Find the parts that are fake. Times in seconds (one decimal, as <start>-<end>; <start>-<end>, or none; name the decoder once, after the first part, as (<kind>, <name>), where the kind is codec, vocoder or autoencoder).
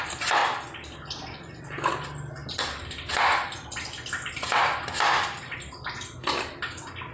none